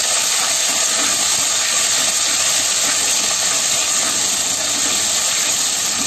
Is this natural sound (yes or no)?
yes